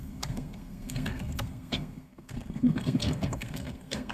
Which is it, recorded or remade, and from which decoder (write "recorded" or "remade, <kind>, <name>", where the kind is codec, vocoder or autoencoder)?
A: remade, codec, SNAC